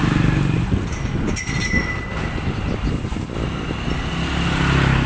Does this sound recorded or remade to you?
recorded